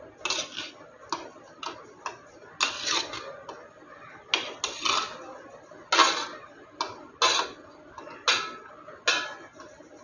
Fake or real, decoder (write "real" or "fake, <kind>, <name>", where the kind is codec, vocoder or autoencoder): real